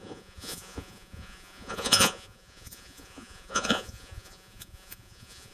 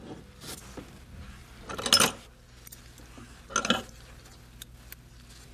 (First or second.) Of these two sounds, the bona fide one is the second